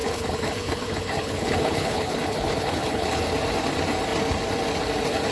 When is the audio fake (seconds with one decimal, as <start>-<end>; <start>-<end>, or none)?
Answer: 0.0-3.2